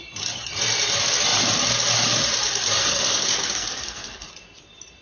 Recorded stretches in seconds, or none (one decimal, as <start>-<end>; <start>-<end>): 0.0-2.8; 4.3-5.0